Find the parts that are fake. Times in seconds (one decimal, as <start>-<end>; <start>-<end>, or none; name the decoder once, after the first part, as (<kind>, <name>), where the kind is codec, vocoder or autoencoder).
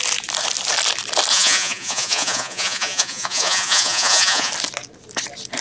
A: 1.3-4.5 (vocoder, Vocos)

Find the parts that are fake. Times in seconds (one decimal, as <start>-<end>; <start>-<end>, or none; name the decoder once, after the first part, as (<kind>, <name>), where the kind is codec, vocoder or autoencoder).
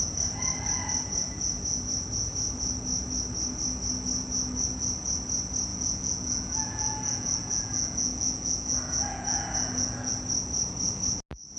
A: 5.7-10.1 (vocoder, Vocos)